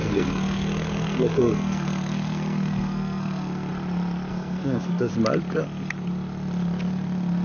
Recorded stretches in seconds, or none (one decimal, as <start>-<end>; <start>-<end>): 3.7-4.3; 5.1-7.4